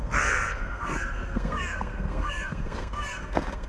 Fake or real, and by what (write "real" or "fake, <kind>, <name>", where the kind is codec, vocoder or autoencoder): fake, codec, SNAC